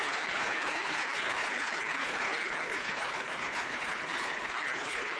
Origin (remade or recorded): remade